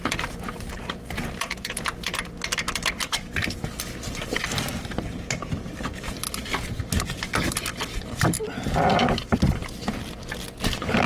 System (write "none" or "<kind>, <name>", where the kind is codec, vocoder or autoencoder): vocoder, BigVGAN v2